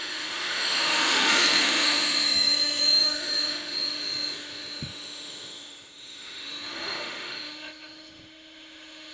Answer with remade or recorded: remade